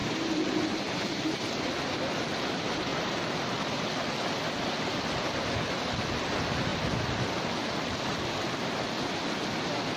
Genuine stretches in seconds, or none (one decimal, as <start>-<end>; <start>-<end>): 1.6-2.9; 3.9-10.0